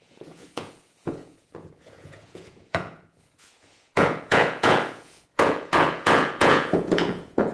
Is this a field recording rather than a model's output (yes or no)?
no